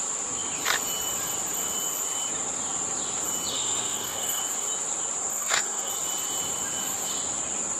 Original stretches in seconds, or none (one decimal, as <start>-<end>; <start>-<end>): 0.0-3.5; 4.4-5.3; 5.9-7.8